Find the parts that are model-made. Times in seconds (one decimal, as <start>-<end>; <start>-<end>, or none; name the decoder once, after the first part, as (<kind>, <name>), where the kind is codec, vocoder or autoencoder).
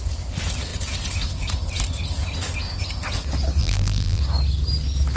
3.6-4.2 (vocoder, BigVGAN v2)